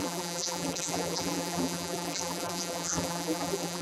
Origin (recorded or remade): remade